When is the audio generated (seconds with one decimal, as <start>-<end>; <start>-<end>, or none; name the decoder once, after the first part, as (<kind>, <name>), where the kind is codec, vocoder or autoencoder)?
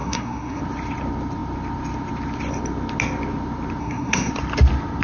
0.0-0.6 (codec, SNAC); 3.8-4.3